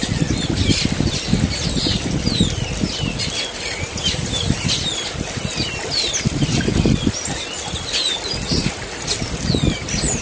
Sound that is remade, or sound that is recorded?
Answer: recorded